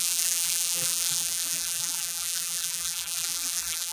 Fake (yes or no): yes